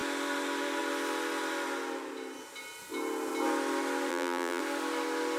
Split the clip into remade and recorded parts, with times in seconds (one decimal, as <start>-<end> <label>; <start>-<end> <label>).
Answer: 0.0-4.1 recorded; 4.1-4.6 remade; 4.6-5.4 recorded